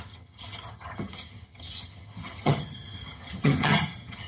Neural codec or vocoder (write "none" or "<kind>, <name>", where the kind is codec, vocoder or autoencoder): vocoder, HiFi-GAN